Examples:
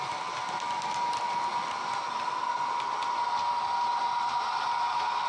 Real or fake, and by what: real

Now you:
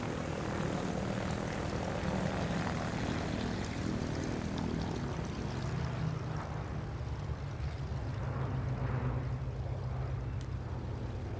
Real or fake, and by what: real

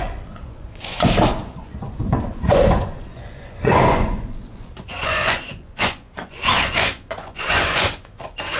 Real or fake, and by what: fake, vocoder, Vocos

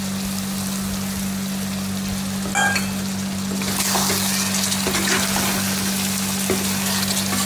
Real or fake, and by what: real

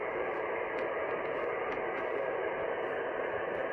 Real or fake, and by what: real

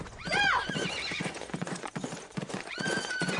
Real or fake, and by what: fake, vocoder, Vocos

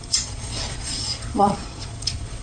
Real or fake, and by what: fake, vocoder, Vocos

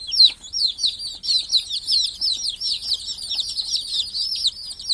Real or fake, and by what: real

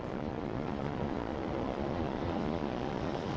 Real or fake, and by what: fake, vocoder, Vocos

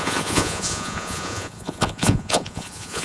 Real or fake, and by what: fake, vocoder, Vocos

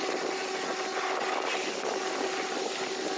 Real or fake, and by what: real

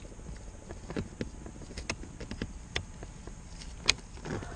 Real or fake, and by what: real